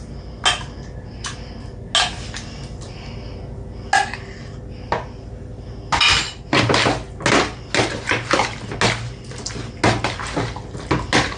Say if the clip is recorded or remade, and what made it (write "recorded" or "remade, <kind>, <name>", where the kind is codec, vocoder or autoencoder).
recorded